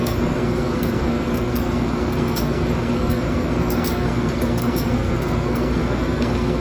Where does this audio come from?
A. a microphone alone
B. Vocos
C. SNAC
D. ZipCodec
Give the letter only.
C